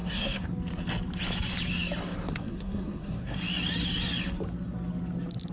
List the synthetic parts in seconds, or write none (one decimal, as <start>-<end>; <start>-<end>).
0.0-0.5; 2.3-3.4